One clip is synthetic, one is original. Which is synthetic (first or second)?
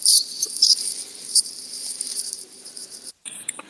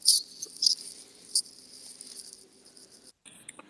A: first